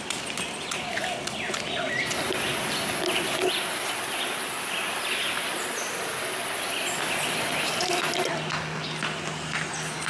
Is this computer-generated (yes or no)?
no